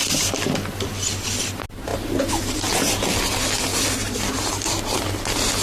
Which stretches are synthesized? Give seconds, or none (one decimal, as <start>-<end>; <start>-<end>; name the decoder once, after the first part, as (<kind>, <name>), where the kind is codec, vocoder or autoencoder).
none